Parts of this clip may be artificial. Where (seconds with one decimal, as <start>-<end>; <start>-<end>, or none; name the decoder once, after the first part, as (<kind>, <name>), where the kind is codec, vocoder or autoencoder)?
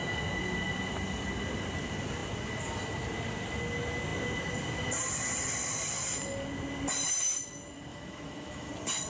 7.9-8.7 (autoencoder, DAC-VAE)